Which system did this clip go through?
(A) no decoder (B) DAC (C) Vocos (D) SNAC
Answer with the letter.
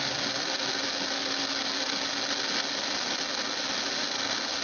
A